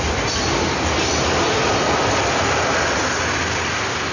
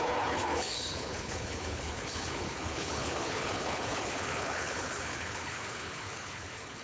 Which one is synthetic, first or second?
second